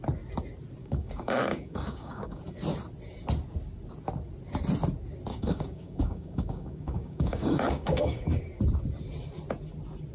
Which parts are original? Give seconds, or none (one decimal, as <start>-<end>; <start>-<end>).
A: 0.0-0.8; 2.4-5.3; 8.4-10.1